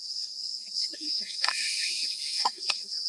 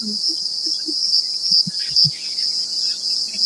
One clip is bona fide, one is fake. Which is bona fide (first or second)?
second